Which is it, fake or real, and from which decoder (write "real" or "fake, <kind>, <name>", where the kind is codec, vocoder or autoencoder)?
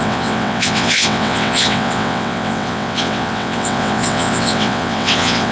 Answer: fake, vocoder, WaveNeXt